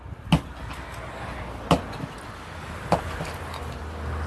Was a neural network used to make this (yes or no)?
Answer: no